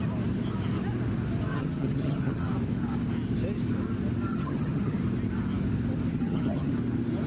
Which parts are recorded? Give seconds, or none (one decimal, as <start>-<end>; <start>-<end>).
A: 0.0-1.5; 2.5-4.3; 5.0-6.1; 6.7-7.3